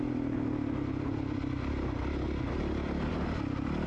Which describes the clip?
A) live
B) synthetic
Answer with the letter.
A